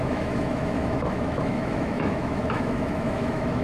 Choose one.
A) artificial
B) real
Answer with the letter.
A